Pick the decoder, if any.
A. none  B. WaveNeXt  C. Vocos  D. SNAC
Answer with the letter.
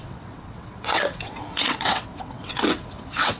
B